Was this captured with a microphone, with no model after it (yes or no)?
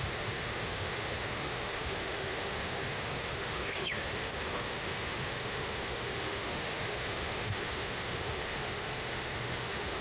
no